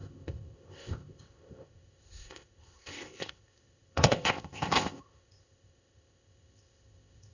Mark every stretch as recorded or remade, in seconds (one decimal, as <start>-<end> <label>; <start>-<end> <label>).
0.0-7.3 remade